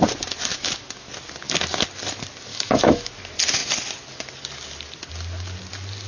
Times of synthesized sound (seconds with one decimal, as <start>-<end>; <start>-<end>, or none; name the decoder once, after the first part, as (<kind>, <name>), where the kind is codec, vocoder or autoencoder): 0.5-1.1 (autoencoder, DAC-VAE); 2.5-3.1